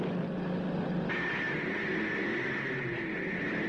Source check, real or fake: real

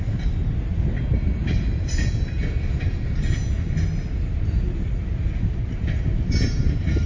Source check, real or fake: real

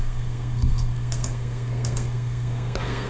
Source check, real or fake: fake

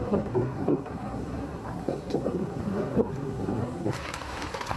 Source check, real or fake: fake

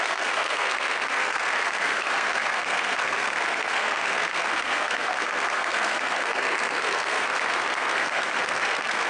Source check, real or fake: fake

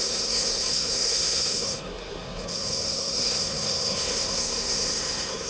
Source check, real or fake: fake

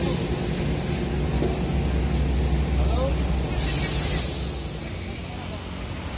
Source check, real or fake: real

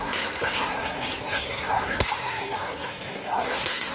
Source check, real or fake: fake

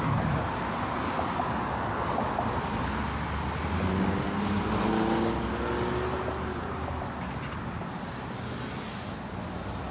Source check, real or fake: real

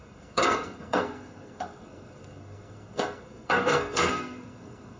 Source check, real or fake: fake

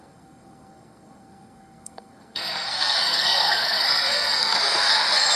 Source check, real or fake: fake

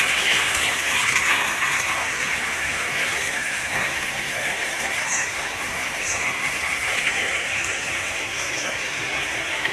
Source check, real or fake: fake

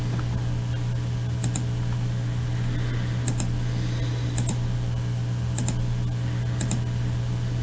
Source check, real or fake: real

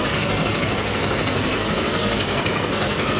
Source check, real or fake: fake